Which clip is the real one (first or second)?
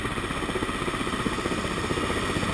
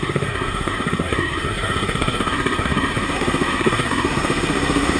first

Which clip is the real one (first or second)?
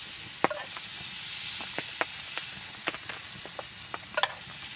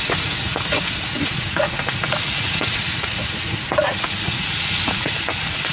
first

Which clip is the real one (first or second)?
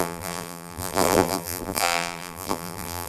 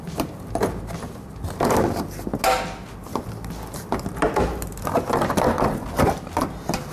second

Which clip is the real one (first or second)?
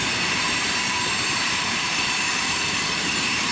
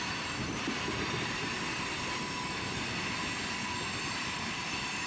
second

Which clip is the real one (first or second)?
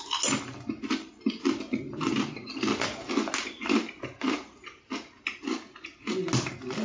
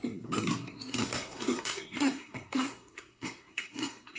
first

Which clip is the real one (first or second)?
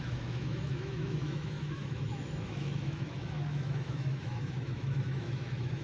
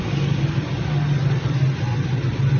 second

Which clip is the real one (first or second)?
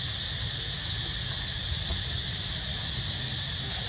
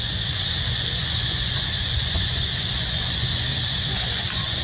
first